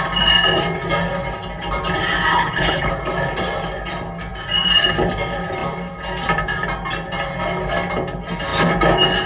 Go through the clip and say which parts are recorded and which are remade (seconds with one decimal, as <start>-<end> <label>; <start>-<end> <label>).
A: 0.0-2.3 recorded; 2.3-2.9 remade; 2.9-9.3 recorded